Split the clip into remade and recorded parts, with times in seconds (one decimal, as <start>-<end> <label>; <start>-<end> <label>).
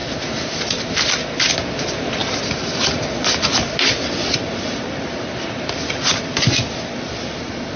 0.0-7.8 recorded